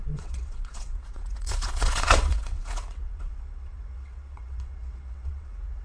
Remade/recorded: remade